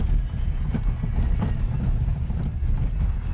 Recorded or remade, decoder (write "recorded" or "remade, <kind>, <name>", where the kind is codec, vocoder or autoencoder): recorded